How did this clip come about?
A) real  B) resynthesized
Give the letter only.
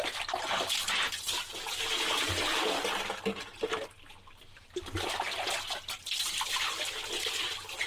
A